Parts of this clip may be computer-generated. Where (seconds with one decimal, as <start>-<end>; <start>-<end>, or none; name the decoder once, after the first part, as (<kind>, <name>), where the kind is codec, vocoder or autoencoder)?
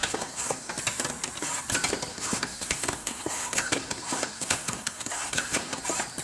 0.0-0.7 (codec, SNAC); 2.1-5.8